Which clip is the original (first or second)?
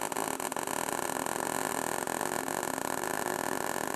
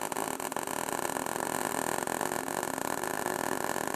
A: first